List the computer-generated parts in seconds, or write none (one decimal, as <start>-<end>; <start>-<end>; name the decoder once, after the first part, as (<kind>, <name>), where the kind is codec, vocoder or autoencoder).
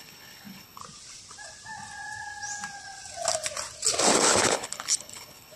0.0-0.8 (codec, HILCodec); 4.2-5.6